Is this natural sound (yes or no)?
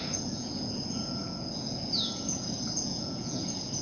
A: no